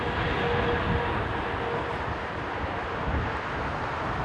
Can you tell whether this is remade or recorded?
recorded